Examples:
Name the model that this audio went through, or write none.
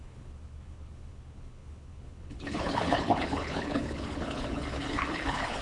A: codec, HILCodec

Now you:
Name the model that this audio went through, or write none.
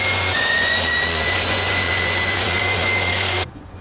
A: vocoder, Vocos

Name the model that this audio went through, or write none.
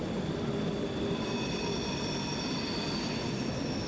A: none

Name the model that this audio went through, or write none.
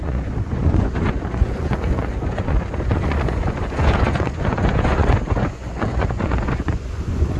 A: vocoder, Vocos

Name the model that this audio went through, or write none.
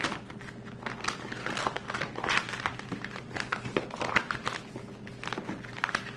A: none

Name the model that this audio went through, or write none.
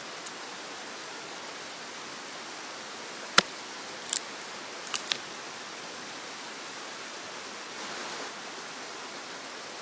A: none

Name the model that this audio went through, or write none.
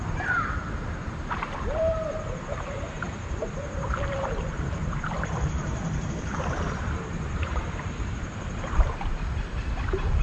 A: vocoder, BigVGAN v2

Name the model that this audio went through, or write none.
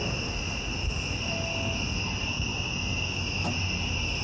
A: none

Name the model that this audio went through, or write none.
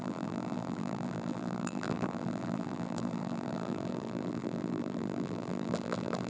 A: vocoder, BigVGAN v2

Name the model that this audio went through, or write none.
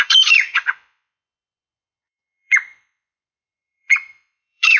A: vocoder, Vocos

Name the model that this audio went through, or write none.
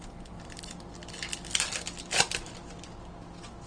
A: none